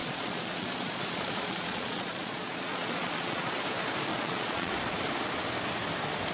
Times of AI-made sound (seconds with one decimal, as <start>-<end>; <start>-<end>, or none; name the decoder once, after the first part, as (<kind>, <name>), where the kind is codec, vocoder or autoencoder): 0.0-3.5 (vocoder, Vocos); 4.1-4.7